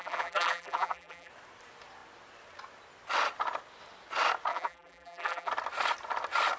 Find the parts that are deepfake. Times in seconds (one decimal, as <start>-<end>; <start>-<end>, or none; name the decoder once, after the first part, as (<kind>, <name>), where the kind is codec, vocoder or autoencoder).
0.0-1.3 (vocoder, BigVGAN v2); 4.5-5.5